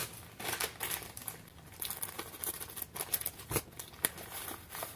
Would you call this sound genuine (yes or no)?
yes